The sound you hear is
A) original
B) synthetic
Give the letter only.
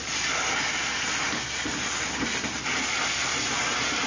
A